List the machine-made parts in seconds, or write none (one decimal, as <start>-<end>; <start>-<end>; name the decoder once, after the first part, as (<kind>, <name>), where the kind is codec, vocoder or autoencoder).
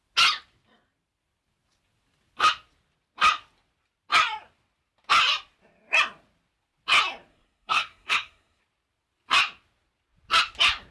7.3-8.6 (codec, SNAC)